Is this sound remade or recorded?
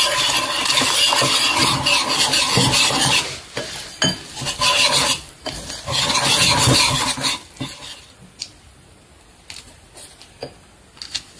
recorded